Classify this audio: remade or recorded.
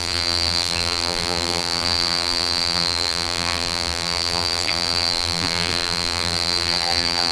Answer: remade